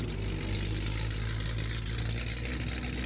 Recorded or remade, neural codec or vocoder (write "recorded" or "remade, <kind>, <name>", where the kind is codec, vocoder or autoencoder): recorded